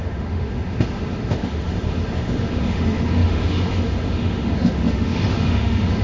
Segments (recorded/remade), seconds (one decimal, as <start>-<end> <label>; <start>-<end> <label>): 0.0-6.0 remade